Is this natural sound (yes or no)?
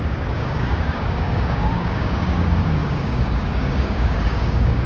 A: no